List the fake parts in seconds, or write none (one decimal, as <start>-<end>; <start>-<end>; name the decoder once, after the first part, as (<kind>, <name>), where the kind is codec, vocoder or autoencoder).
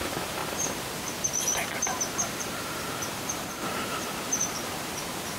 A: 0.0-0.4 (vocoder, BigVGAN v2); 2.4-5.4